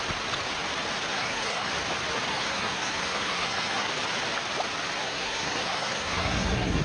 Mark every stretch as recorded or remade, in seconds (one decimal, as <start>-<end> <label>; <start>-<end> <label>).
0.0-1.1 recorded; 1.1-1.7 remade; 1.7-2.3 recorded; 2.3-3.9 remade; 3.9-5.0 recorded; 5.0-6.8 remade